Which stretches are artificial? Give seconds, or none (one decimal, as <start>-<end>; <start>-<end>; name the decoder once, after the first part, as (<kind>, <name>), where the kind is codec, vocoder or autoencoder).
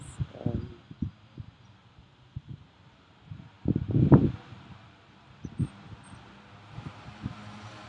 1.8-3.4 (vocoder, BigVGAN v2); 4.5-7.9